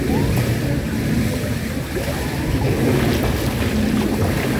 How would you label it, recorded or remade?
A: recorded